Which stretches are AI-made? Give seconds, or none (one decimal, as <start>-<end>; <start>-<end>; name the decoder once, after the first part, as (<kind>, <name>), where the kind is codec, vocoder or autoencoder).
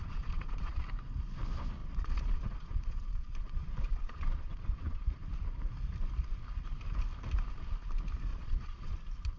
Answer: 0.0-0.8 (vocoder, Vocos); 1.8-5.2; 8.3-9.0